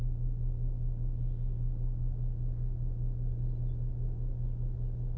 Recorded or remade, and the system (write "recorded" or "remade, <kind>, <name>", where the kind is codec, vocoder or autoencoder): recorded